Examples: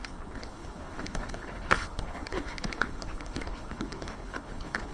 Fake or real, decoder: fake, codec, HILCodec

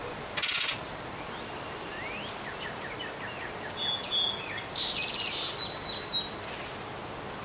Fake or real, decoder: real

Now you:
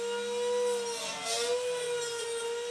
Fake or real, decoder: real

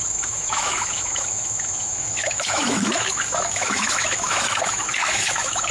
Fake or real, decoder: fake, autoencoder, DAC-VAE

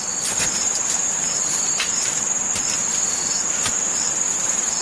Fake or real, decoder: fake, vocoder, BigVGAN v2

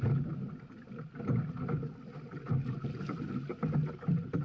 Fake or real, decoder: real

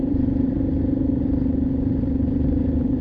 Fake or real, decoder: fake, vocoder, BigVGAN v2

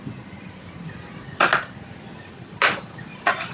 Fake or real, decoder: real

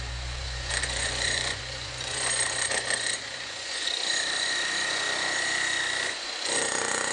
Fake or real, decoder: fake, vocoder, Vocos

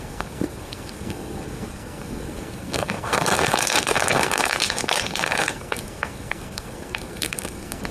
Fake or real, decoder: fake, codec, SNAC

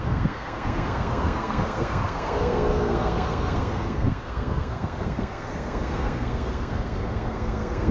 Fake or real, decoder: fake, codec, SNAC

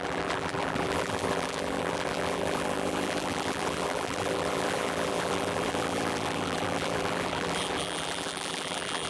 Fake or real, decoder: fake, vocoder, BigVGAN v2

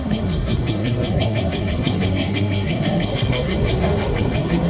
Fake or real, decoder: fake, codec, SNAC